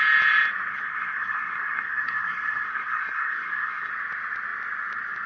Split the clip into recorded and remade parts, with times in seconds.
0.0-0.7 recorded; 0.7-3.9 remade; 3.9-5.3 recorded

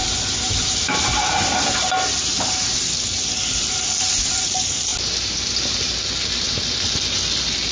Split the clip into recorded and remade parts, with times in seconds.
0.0-7.7 recorded

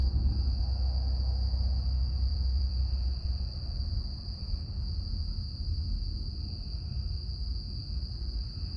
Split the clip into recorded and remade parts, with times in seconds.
0.0-2.3 recorded; 2.3-4.7 remade; 4.7-7.8 recorded; 7.8-8.4 remade; 8.4-8.8 recorded

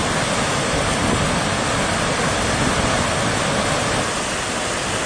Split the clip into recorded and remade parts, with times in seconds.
0.0-5.1 recorded

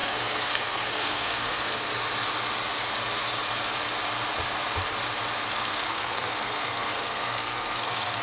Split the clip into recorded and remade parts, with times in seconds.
0.0-1.9 remade; 1.9-5.5 recorded; 5.5-8.2 remade

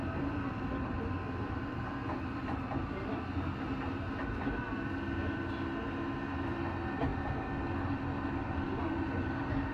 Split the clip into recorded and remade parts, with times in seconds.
0.0-9.7 recorded

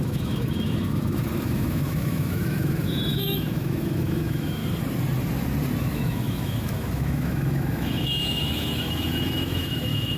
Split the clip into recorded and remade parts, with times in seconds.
0.0-4.6 remade; 4.6-5.8 recorded; 5.8-10.2 remade

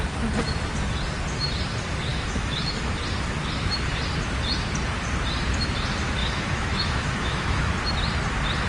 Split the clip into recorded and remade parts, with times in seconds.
0.0-2.1 recorded; 2.1-3.0 remade; 3.0-6.2 recorded; 6.2-7.7 remade; 7.7-8.7 recorded